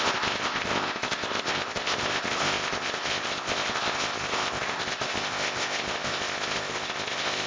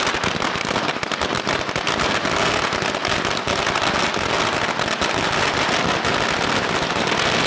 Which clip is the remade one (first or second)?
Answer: first